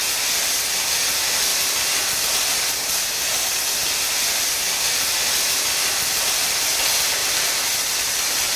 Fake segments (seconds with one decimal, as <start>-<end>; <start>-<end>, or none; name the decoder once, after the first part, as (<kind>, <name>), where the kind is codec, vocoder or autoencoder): 1.5-2.2 (vocoder, BigVGAN v2); 3.8-6.8; 7.2-8.6